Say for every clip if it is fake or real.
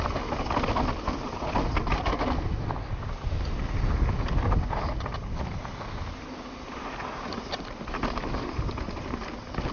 real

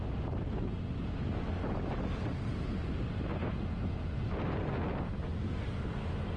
real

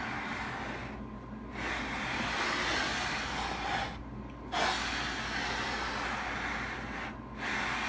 real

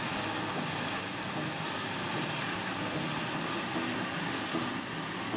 real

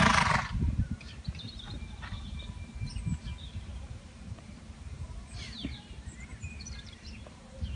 fake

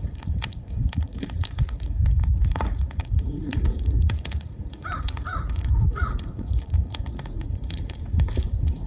fake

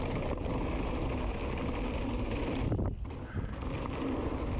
real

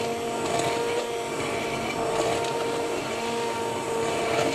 real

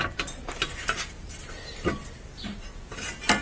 real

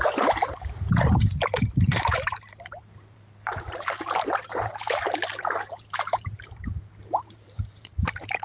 fake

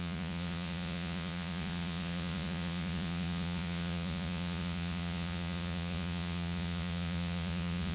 fake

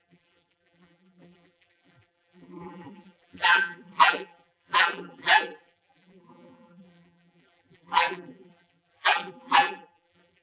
fake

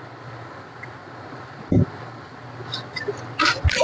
real